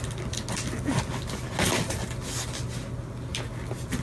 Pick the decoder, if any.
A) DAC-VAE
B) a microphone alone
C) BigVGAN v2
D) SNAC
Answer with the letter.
B